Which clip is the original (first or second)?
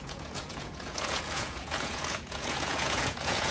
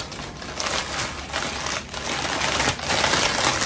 second